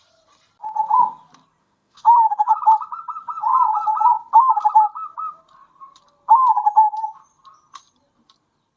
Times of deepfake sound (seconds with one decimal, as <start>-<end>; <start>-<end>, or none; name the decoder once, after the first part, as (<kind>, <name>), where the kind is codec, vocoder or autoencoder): 1.6-2.5 (autoencoder, DAC-VAE)